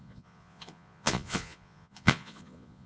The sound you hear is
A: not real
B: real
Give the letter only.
A